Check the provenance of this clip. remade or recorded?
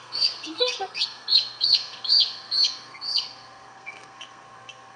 remade